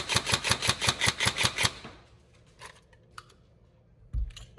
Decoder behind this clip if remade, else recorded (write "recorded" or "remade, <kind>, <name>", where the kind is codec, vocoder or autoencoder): recorded